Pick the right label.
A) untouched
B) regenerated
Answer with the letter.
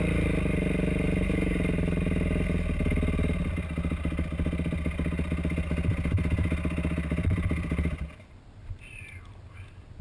A